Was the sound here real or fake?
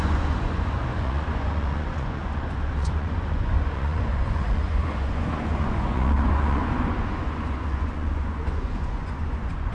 fake